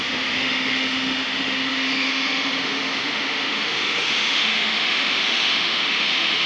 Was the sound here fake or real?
fake